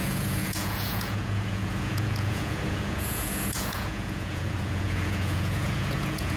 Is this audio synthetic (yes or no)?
yes